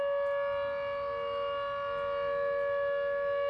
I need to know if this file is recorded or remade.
recorded